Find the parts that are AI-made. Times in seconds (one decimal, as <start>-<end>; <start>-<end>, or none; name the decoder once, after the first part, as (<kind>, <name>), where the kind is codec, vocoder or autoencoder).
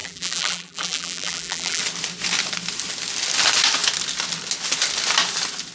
0.0-1.8 (vocoder, BigVGAN v2)